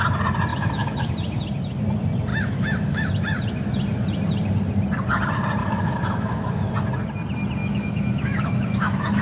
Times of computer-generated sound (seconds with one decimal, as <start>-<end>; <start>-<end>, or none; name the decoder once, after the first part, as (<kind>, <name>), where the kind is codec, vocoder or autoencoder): 0.5-1.1 (autoencoder, DAC-VAE); 2.3-3.1; 5.6-6.7; 7.6-9.2